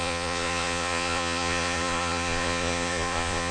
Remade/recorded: remade